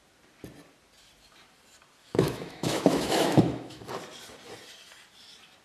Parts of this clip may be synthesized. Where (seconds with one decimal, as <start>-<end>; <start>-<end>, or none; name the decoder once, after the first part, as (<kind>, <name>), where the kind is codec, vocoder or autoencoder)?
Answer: 2.0-3.9 (autoencoder, DAC-VAE)